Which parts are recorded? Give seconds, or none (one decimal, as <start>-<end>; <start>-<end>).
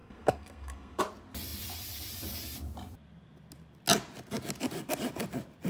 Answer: 1.0-5.7